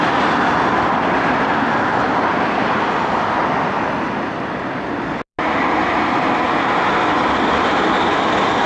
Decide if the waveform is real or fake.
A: real